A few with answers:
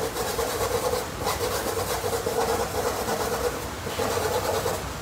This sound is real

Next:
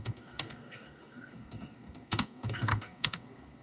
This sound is fake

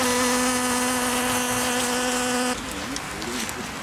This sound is real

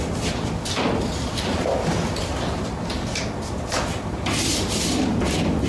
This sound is real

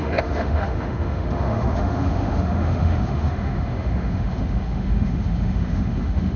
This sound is fake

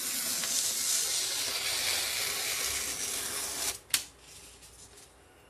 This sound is real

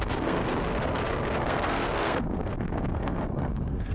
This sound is fake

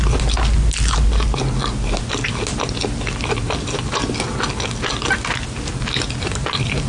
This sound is real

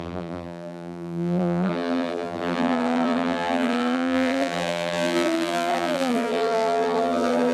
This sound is fake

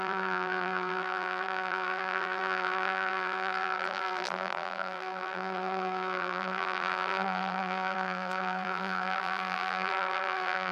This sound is fake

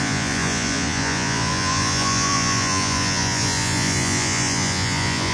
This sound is fake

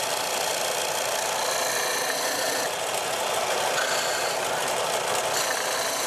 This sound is real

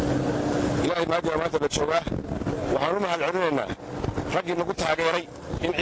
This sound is real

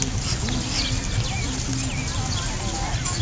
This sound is real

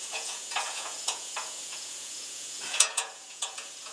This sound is fake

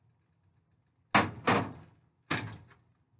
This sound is real